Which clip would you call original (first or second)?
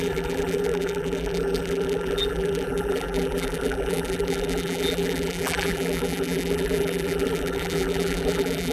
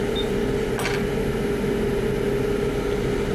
second